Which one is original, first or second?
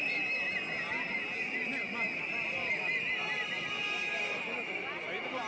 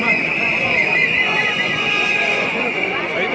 first